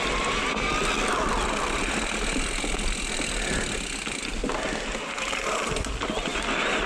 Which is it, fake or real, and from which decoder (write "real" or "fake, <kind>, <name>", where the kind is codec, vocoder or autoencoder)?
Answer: real